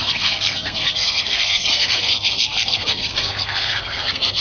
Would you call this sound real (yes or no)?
no